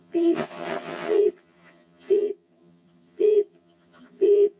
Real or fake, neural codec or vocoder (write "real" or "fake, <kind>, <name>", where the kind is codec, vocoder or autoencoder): fake, vocoder, HiFi-GAN